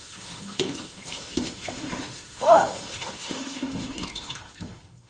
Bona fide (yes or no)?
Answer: no